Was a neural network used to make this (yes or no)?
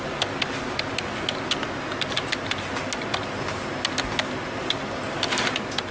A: no